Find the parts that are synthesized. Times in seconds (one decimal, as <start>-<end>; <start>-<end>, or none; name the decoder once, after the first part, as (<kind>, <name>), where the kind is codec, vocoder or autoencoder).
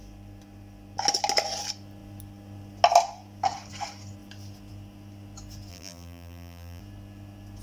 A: 5.7-6.8 (vocoder, BigVGAN v2)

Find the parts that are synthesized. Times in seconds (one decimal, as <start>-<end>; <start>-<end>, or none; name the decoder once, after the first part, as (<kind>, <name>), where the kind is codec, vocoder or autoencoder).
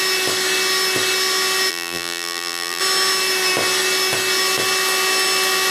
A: 1.7-2.8 (vocoder, BigVGAN v2)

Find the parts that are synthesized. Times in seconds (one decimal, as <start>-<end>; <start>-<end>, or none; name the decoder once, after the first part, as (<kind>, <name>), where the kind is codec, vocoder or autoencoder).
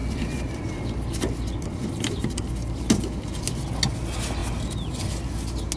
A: 0.0-2.1 (vocoder, BigVGAN v2)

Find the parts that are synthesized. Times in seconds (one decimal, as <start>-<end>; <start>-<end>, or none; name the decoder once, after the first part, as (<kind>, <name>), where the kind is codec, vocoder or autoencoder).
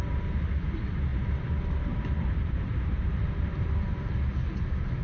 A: 1.1-4.1 (vocoder, BigVGAN v2)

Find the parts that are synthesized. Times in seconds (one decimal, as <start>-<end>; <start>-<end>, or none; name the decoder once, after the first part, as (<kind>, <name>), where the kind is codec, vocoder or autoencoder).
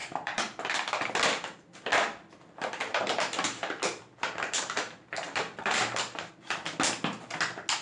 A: 0.0-0.6 (vocoder, BigVGAN v2); 2.9-6.3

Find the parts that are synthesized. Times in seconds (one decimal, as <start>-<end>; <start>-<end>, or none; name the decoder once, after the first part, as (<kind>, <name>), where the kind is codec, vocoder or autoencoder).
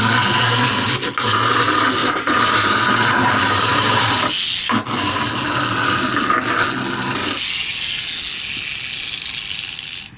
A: 2.0-4.1 (vocoder, BigVGAN v2)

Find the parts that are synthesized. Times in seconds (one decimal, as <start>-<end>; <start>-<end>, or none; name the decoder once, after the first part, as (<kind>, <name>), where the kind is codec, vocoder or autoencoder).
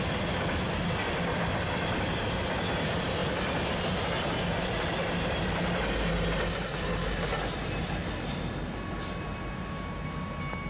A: none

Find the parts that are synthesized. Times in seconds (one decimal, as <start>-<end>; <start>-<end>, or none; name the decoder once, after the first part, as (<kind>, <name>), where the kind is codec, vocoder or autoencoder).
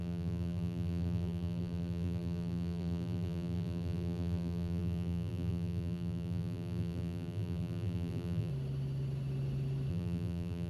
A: 0.0-8.5 (vocoder, BigVGAN v2); 9.9-10.7